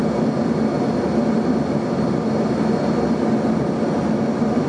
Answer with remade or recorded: recorded